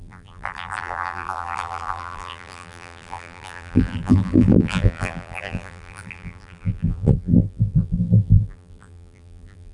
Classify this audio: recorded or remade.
remade